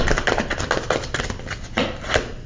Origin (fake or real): real